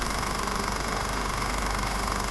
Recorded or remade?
remade